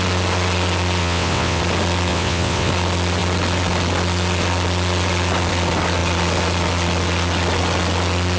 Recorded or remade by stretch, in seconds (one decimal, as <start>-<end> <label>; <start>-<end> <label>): 0.0-1.0 recorded; 1.0-1.6 remade; 1.6-2.1 recorded; 2.1-2.7 remade; 2.7-8.4 recorded